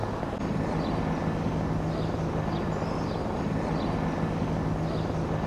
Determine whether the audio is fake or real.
real